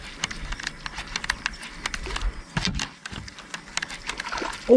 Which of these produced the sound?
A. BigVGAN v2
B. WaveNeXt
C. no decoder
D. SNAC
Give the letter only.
C